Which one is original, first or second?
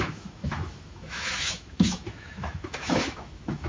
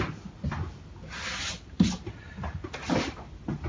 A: second